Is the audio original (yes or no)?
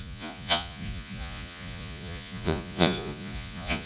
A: no